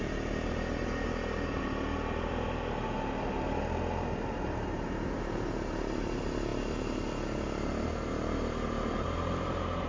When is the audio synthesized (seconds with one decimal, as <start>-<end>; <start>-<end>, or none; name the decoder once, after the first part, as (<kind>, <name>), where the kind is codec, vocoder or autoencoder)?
none